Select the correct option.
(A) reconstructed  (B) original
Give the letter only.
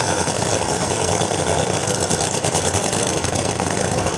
A